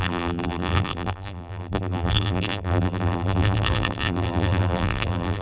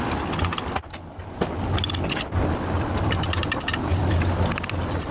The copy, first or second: first